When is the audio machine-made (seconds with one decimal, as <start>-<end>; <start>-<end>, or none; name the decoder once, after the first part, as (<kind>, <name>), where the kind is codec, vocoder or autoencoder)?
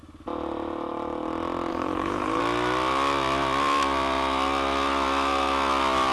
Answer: 1.7-2.4 (codec, HILCodec)